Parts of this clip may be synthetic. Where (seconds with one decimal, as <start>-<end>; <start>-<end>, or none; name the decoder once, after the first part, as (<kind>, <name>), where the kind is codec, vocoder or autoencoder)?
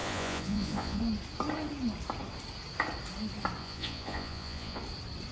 0.0-1.0 (vocoder, Vocos); 3.6-4.8